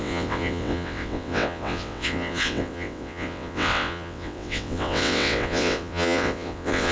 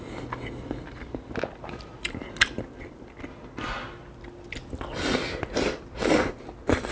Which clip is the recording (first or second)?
second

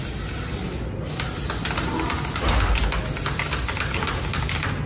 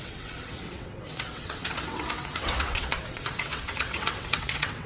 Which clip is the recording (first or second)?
first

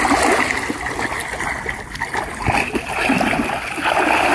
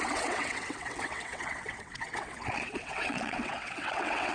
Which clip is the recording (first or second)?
first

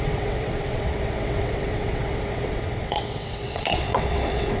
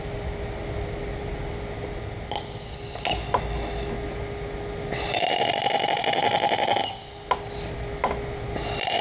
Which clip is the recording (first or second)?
second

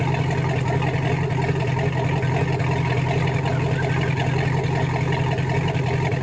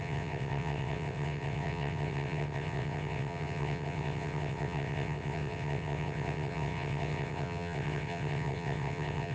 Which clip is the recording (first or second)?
first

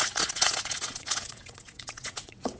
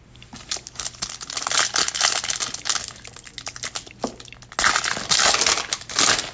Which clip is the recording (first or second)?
second